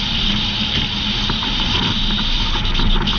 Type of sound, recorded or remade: recorded